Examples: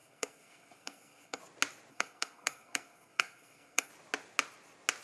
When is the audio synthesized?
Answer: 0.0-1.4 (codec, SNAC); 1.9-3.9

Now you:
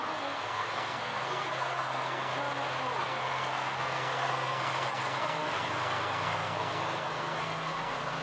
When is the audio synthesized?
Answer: 0.0-2.3 (codec, SNAC); 3.0-8.2